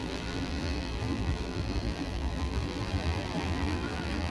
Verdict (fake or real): fake